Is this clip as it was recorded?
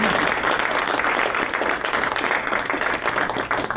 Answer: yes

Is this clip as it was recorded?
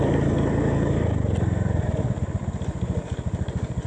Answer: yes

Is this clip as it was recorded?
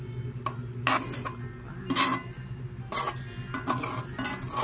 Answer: yes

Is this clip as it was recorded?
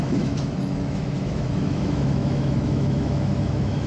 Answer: no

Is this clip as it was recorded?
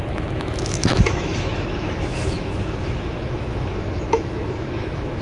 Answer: no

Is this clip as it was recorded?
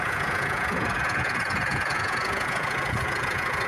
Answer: no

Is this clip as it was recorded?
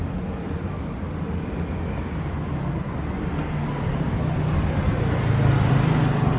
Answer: yes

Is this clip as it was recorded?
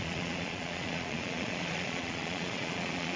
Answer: no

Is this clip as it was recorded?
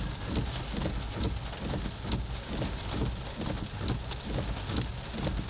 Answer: yes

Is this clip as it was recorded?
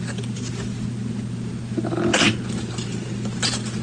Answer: yes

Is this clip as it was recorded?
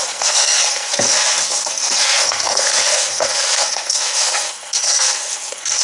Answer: no